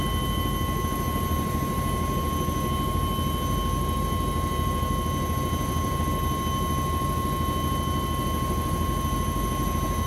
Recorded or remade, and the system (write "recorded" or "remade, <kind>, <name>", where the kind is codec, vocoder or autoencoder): recorded